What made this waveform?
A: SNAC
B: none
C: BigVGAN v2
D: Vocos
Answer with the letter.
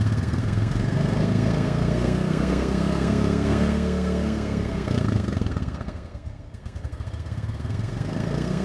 A